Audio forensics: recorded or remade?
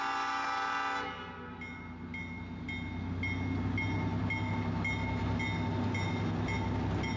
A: recorded